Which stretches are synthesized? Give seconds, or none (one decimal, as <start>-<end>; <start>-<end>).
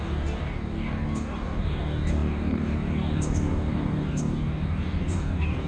0.0-5.7